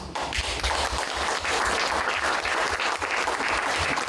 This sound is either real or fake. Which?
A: real